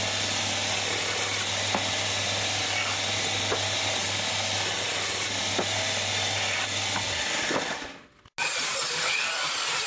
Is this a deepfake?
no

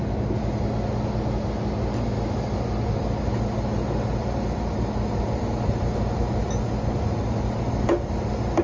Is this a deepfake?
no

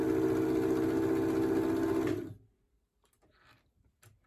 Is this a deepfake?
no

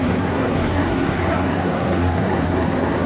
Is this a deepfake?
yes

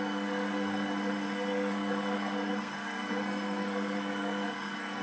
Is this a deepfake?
yes